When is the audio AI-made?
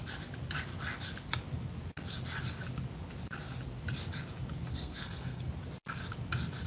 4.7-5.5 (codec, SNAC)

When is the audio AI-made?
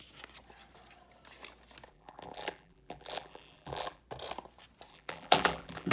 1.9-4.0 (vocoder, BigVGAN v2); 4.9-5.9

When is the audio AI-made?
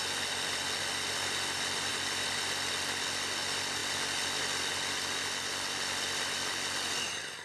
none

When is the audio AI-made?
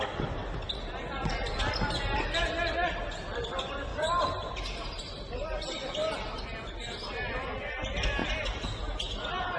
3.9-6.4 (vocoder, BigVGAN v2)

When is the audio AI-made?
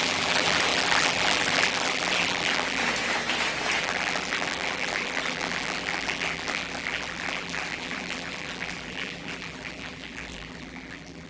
0.0-2.8 (vocoder, BigVGAN v2); 3.8-11.3